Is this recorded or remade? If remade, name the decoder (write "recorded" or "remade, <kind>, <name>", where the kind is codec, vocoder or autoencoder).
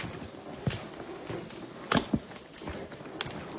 recorded